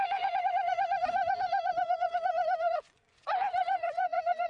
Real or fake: fake